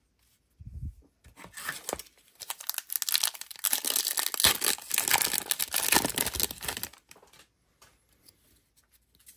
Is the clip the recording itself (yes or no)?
yes